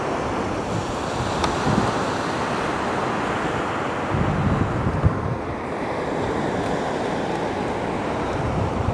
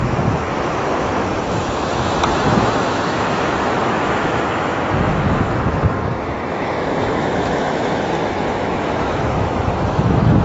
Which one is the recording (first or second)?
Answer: first